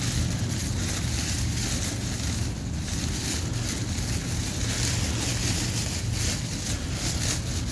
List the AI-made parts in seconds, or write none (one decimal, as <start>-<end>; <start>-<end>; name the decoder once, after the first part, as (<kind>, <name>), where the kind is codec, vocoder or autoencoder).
none